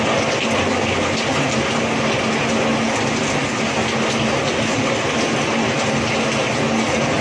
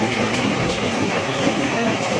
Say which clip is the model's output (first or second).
second